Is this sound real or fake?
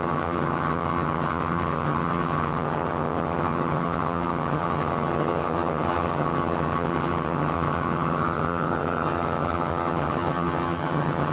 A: fake